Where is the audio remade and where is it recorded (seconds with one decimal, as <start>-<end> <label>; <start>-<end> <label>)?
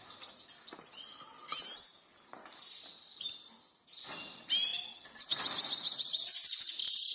0.0-7.1 recorded